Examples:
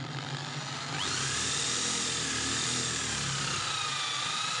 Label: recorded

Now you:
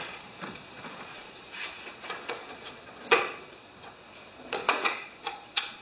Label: remade